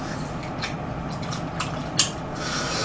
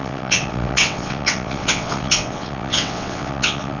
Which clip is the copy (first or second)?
second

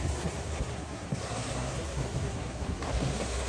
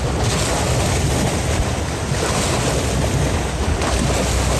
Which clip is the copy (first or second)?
first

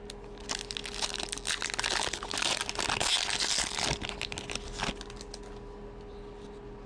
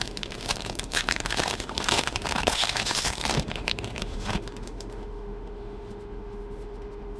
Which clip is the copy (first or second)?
second